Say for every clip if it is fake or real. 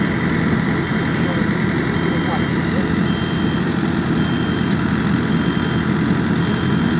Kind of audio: real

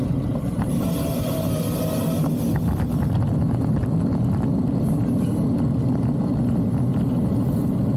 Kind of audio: real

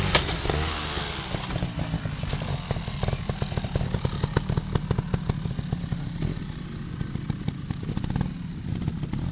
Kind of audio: real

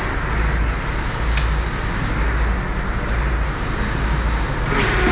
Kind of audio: real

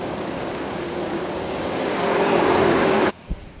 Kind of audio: fake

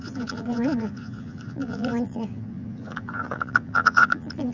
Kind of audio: fake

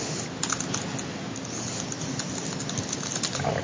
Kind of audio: real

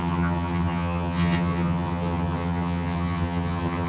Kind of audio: fake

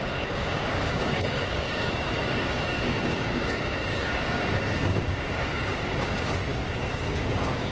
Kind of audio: fake